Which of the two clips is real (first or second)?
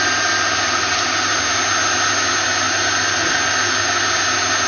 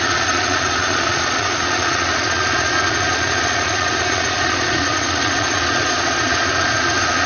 first